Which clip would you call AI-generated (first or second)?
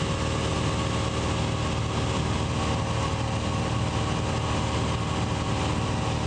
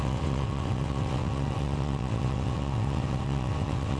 second